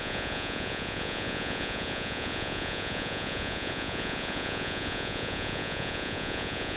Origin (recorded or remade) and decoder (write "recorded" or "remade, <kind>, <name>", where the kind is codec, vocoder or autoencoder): remade, vocoder, Vocos